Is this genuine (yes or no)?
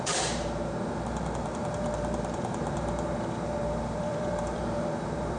no